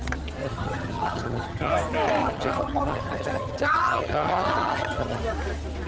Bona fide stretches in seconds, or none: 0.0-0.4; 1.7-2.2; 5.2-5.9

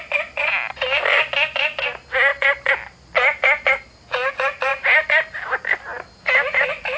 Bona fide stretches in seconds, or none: 0.0-7.0

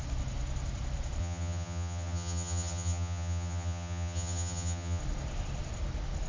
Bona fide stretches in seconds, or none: 0.0-1.2; 5.0-6.3